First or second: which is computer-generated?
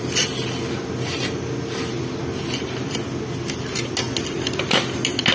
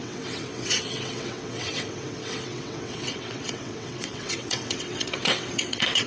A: second